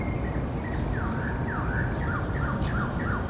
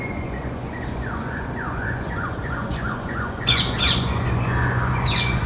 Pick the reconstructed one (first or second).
second